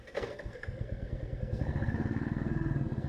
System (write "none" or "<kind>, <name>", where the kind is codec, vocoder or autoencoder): codec, SNAC